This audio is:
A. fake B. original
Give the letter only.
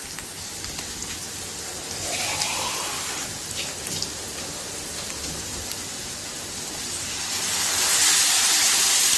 B